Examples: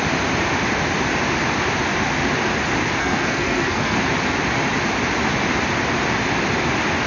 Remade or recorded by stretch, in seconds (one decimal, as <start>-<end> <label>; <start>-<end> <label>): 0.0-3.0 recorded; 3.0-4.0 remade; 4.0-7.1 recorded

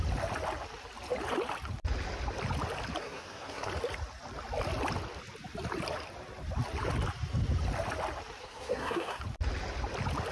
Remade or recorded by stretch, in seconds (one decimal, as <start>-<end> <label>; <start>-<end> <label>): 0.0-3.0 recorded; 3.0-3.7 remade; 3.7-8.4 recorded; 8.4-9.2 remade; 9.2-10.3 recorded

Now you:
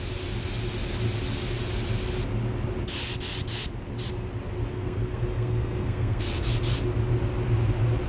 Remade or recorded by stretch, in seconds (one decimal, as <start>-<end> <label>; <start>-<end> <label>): 0.0-4.7 recorded; 4.7-6.2 remade; 6.2-8.1 recorded

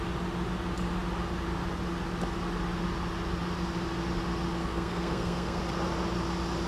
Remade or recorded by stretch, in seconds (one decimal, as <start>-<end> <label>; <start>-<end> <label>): 0.0-4.6 recorded; 4.6-5.6 remade; 5.6-6.7 recorded